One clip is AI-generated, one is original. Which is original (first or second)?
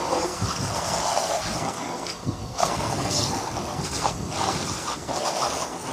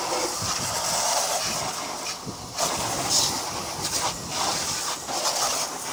second